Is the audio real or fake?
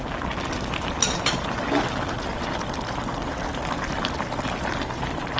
real